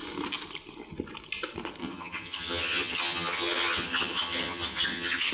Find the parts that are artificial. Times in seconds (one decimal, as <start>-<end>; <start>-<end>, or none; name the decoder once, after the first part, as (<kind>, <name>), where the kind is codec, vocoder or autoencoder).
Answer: 1.8-5.3 (vocoder, HiFi-GAN)